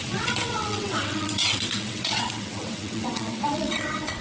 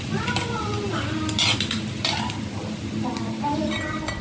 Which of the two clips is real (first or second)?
second